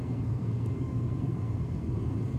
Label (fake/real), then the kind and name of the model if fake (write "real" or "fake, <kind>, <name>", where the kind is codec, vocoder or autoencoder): fake, codec, SNAC